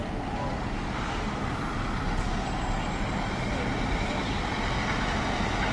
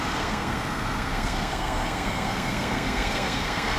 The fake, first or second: second